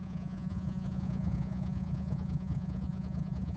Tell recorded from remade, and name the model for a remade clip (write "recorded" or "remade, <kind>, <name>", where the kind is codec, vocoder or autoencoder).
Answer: remade, vocoder, Vocos